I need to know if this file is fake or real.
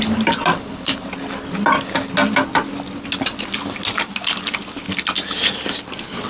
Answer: real